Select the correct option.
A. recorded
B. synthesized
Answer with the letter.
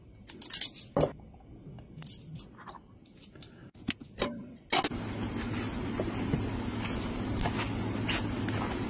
A